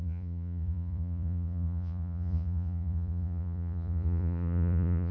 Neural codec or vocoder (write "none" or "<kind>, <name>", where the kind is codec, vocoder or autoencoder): vocoder, Vocos